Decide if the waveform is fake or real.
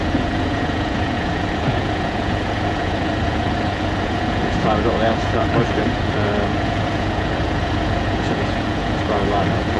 fake